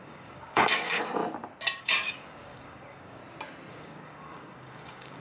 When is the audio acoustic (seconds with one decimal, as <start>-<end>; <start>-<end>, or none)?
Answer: 1.2-1.8; 3.2-3.7